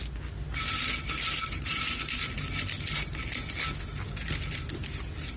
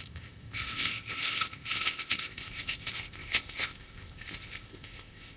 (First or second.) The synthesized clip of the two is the second